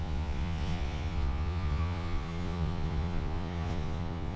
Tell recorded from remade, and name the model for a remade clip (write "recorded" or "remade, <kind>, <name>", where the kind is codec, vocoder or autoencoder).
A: remade, vocoder, Vocos